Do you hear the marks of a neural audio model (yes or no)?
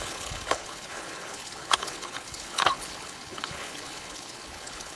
yes